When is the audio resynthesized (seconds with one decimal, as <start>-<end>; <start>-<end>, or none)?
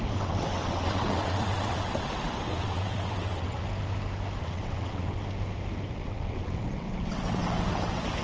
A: 0.0-3.6; 4.4-5.2; 5.9-8.2